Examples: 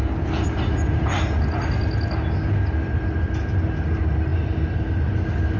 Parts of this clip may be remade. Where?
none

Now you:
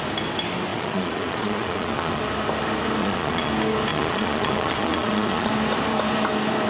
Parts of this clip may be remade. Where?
0.7-2.2 (vocoder, Vocos); 3.0-3.5; 3.9-5.5

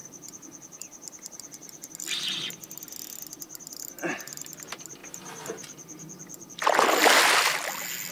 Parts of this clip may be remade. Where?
0.0-1.9 (vocoder, BigVGAN v2)

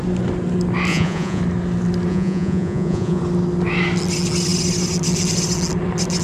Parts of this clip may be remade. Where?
0.9-1.4 (vocoder, Vocos); 2.1-3.2

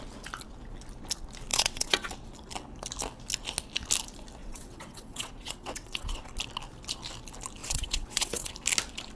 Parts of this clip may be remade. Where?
1.5-2.1 (vocoder, WaveNeXt); 4.4-6.3; 7.6-8.5

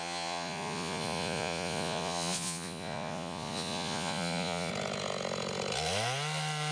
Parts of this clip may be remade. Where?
0.0-4.7 (vocoder, Vocos)

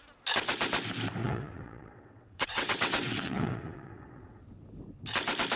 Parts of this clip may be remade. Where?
1.2-4.4 (vocoder, WaveNeXt)

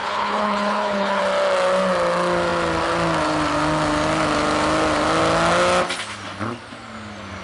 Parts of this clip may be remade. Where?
0.0-1.2 (codec, HILCodec)